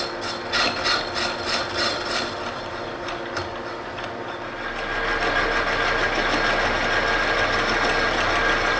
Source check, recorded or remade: recorded